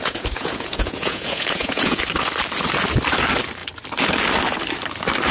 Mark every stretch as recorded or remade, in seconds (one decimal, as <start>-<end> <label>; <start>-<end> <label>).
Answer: 0.0-2.0 remade; 2.0-5.3 recorded